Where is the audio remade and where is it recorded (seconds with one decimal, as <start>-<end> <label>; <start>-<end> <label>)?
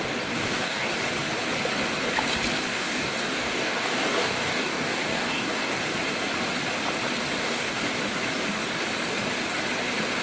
0.0-0.4 recorded; 0.4-0.9 remade; 0.9-2.7 recorded; 2.7-5.7 remade; 5.7-7.4 recorded; 7.4-7.9 remade; 7.9-10.2 recorded